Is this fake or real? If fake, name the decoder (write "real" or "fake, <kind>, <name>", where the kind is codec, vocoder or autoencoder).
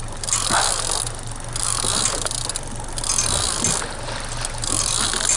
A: real